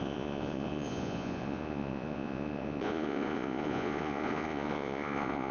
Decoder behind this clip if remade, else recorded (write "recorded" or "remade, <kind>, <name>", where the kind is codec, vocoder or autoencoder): remade, vocoder, Vocos